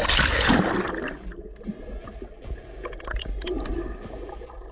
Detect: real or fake real